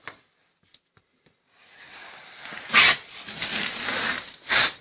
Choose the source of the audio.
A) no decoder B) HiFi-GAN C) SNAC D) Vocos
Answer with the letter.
A